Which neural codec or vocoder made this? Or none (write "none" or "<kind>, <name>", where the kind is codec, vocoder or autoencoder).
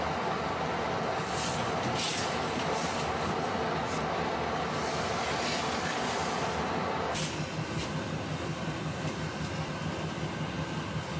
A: none